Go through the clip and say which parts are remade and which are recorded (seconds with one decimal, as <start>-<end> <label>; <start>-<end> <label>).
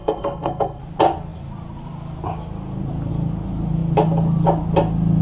0.0-0.8 remade; 0.8-5.2 recorded